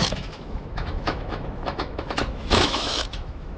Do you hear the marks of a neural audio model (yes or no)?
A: yes